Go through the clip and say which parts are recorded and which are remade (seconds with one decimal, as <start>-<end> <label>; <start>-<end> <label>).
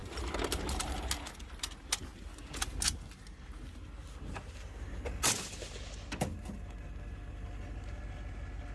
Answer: 0.0-8.7 recorded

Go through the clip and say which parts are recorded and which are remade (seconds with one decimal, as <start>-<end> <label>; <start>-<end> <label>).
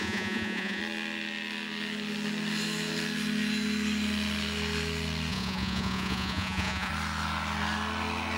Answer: 0.0-0.8 remade; 0.8-5.3 recorded; 5.3-6.9 remade; 6.9-8.4 recorded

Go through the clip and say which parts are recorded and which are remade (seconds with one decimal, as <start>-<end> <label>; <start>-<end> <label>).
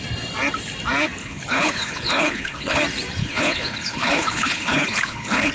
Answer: 0.0-1.2 recorded; 1.2-2.8 remade; 2.8-3.2 recorded; 3.2-5.5 remade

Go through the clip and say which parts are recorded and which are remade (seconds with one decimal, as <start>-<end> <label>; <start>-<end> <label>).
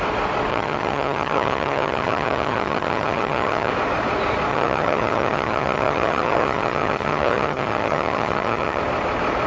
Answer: 0.0-0.5 recorded; 0.5-3.7 remade; 3.7-4.5 recorded; 4.5-8.8 remade; 8.8-9.5 recorded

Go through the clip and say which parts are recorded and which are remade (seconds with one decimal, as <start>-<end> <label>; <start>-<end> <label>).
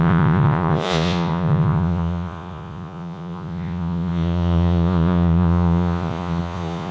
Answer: 0.0-6.9 remade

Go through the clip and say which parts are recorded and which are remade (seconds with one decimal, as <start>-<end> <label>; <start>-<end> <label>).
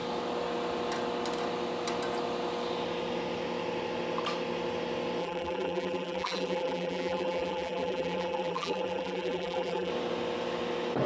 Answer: 0.0-5.2 recorded; 5.2-9.9 remade; 9.9-11.1 recorded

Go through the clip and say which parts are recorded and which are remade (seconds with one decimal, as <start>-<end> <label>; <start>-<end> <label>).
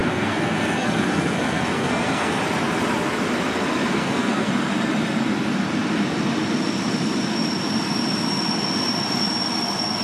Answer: 0.0-2.4 remade; 2.4-3.9 recorded; 3.9-4.5 remade; 4.5-10.0 recorded